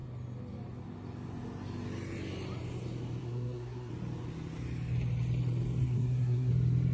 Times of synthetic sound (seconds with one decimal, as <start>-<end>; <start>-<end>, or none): 3.2-3.9; 5.8-6.5